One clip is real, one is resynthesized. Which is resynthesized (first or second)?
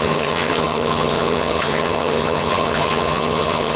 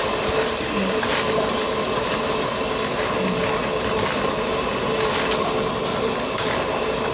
first